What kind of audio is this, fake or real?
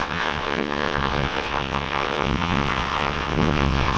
fake